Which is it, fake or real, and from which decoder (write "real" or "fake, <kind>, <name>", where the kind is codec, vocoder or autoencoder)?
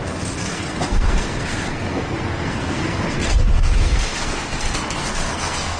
fake, codec, SNAC